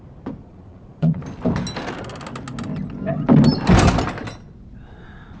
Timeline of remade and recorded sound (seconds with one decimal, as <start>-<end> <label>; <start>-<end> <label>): 0.0-0.4 recorded; 0.4-1.2 remade; 1.2-5.4 recorded